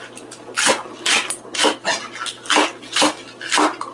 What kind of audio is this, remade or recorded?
recorded